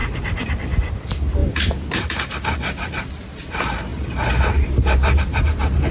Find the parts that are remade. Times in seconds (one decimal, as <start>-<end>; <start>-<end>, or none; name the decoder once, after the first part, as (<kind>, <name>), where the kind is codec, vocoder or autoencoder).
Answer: 0.0-0.5 (vocoder, BigVGAN v2); 1.4-3.1; 3.9-5.2